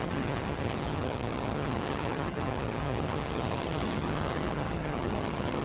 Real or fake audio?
fake